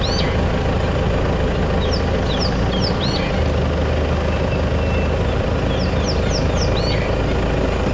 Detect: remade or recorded recorded